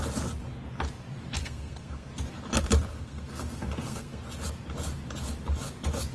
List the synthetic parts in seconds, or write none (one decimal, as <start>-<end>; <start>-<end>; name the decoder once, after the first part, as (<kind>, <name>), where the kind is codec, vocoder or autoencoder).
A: 1.4-2.1 (codec, SNAC); 2.9-4.2

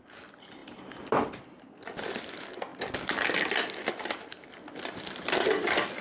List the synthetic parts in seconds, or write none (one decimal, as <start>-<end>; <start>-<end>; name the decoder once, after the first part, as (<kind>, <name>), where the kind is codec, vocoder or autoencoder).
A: none

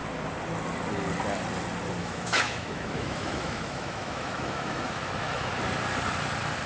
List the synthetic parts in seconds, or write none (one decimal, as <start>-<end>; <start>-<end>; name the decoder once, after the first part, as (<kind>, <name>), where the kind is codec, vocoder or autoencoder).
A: 2.0-5.5 (autoencoder, DAC-VAE)

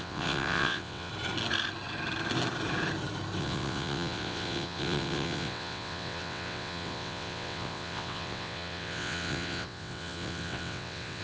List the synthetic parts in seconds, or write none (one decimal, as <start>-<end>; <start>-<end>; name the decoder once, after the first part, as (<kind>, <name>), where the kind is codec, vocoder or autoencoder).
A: 0.0-1.1 (vocoder, WaveNeXt); 3.4-11.2

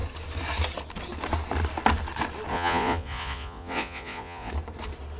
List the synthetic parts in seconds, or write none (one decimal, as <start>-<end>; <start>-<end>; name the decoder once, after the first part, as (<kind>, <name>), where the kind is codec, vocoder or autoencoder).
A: 2.5-4.5 (vocoder, Vocos)